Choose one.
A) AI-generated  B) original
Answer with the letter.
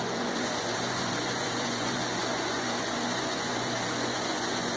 A